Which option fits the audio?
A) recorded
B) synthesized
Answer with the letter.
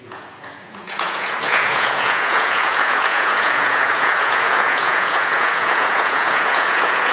B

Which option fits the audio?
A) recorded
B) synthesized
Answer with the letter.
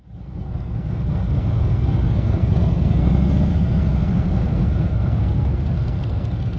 B